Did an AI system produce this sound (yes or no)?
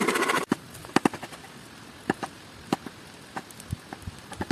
no